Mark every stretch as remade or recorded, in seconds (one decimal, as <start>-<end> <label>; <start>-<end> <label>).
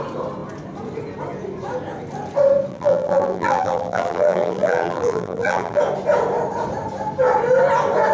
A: 0.0-2.7 recorded; 2.7-5.8 remade; 5.8-8.1 recorded